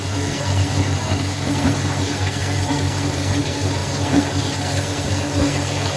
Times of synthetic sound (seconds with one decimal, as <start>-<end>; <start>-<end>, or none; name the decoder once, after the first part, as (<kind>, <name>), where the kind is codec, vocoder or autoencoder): 0.0-6.0 (codec, SNAC)